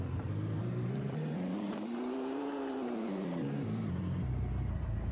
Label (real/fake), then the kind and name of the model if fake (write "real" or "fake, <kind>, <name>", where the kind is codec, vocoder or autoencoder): fake, vocoder, BigVGAN v2